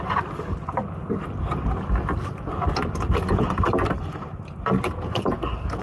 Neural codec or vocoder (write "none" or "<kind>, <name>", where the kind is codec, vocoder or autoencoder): none